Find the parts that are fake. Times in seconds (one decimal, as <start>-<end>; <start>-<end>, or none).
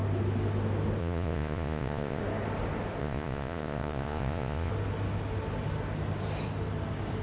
1.0-2.2; 3.0-4.7